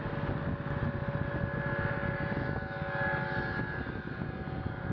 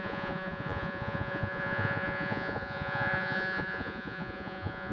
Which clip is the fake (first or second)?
second